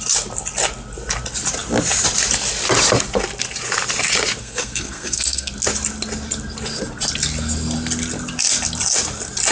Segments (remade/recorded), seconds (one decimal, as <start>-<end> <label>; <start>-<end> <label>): 0.0-4.4 recorded; 4.4-5.5 remade; 5.5-9.5 recorded